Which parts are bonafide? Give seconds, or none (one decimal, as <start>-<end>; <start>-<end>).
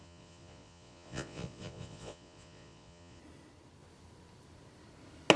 3.2-5.4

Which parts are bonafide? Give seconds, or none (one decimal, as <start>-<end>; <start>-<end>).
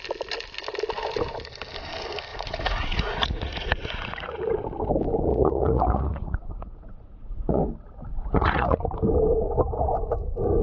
0.0-2.3; 4.5-5.3; 7.6-8.1; 8.8-10.6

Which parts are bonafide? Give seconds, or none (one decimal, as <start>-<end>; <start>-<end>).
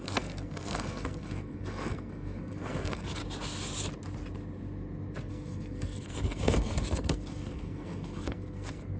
3.2-5.3